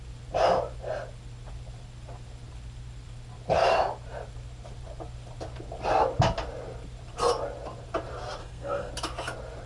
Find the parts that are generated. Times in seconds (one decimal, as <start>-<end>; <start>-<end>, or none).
8.4-8.9